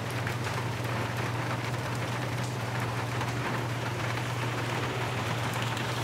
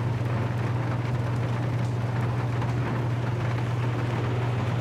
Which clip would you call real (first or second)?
second